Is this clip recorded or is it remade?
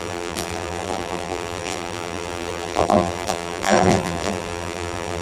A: remade